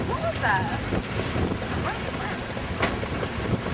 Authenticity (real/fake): real